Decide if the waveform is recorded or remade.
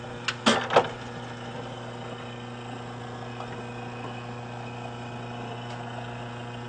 recorded